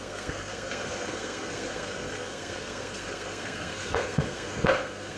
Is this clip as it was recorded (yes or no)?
no